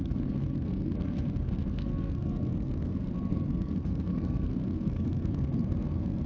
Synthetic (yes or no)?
yes